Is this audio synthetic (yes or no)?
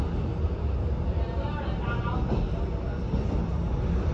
no